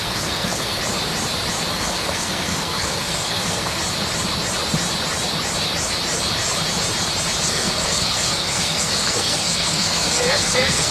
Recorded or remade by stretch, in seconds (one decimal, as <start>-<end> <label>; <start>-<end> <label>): 0.0-0.8 remade; 0.8-1.7 recorded; 1.7-3.8 remade; 3.8-7.4 recorded; 7.4-10.9 remade